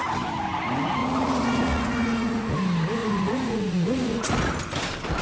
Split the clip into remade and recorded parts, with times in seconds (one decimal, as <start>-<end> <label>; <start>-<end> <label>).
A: 0.0-1.0 recorded; 1.0-2.5 remade; 2.5-3.0 recorded; 3.0-4.5 remade; 4.5-5.2 recorded